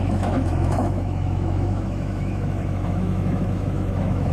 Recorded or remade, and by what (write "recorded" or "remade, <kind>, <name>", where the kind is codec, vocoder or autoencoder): remade, autoencoder, DAC-VAE